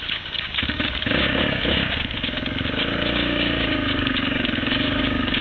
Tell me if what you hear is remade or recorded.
remade